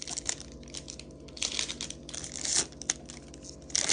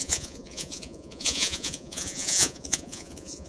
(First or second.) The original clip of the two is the first